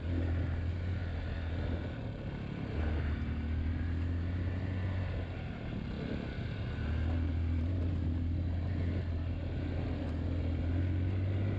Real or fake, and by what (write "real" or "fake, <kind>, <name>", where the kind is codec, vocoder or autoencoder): real